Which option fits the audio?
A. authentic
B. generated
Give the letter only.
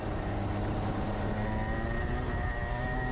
A